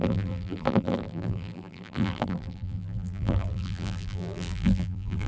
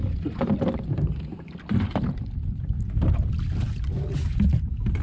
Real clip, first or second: second